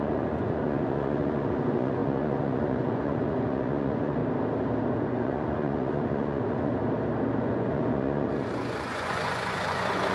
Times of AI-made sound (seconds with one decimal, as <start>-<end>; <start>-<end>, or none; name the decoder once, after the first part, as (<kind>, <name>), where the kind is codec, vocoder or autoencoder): 0.0-4.2 (vocoder, Vocos); 4.9-6.8; 7.4-10.1